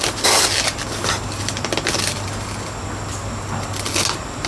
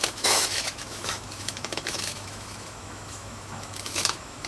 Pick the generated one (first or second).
second